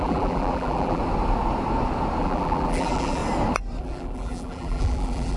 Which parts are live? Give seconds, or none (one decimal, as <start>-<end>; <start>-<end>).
1.0-2.2; 3.2-3.8